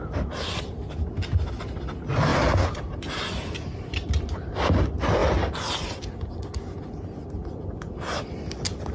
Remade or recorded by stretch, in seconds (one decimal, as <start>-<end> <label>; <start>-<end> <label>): 0.0-8.9 recorded